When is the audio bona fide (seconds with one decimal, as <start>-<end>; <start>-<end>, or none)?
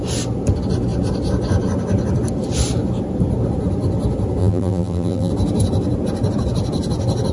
0.0-4.4; 5.3-7.3